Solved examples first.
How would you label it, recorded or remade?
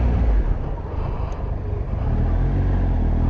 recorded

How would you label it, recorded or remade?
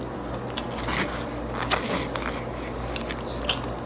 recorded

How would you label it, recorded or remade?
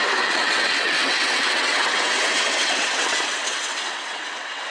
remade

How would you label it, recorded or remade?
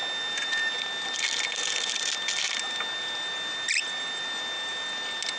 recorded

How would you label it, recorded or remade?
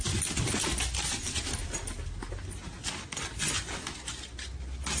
recorded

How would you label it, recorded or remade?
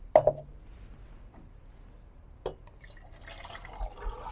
recorded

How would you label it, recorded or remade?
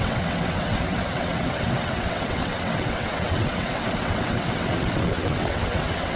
remade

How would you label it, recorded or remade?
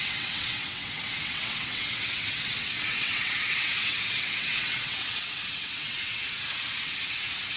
remade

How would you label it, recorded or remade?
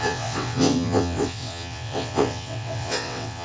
remade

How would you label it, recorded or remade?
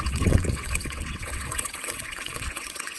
remade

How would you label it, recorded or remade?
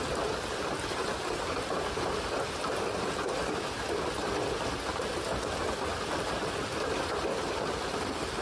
recorded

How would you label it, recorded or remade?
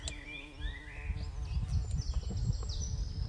recorded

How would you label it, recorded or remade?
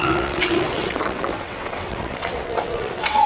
remade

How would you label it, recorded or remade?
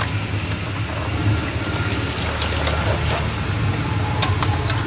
recorded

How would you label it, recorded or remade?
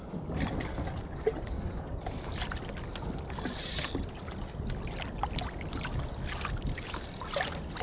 recorded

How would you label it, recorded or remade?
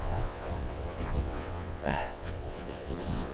remade